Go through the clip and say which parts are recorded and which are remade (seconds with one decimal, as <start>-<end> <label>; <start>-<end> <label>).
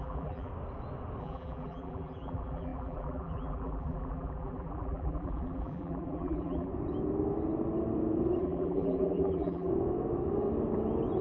0.0-0.5 remade; 0.5-1.2 recorded; 1.2-6.7 remade; 6.7-8.4 recorded; 8.4-9.7 remade; 9.7-11.2 recorded